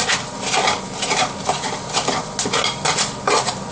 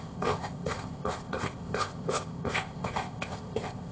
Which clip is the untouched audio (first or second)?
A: first